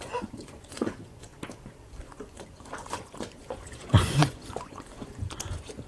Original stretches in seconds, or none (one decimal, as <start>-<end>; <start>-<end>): 1.3-1.8